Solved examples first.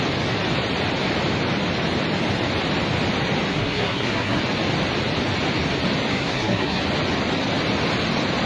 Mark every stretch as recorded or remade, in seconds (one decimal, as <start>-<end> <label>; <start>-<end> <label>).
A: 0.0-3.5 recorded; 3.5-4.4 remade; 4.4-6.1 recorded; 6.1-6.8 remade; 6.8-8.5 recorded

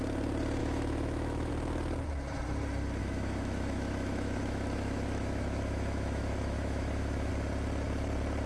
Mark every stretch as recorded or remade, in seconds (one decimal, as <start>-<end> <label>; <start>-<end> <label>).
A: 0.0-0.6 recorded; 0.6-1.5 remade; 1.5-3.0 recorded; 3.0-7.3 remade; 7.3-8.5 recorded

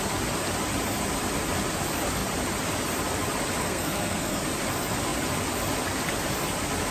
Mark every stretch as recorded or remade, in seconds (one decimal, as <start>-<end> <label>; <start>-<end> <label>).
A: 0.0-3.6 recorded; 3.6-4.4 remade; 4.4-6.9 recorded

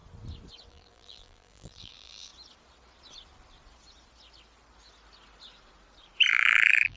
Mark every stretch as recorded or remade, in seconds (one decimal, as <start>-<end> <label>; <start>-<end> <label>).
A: 0.0-0.7 recorded; 0.7-2.3 remade; 2.3-6.3 recorded; 6.3-7.0 remade

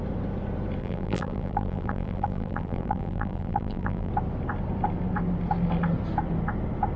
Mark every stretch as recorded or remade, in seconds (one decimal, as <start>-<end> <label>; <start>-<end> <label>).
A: 0.0-0.8 recorded; 0.8-4.1 remade; 4.1-7.0 recorded